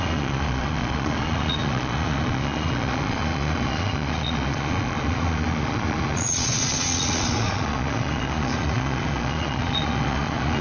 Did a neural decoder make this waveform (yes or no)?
yes